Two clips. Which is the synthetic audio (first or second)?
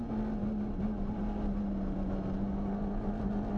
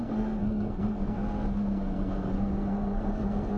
second